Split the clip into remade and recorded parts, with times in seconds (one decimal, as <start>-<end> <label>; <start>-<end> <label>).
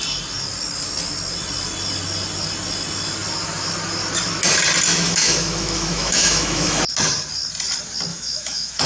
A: 0.0-4.9 recorded; 4.9-6.8 remade; 6.8-8.1 recorded; 8.1-8.9 remade